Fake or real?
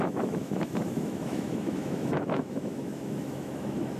fake